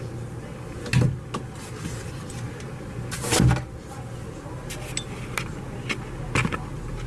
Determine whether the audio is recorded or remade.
recorded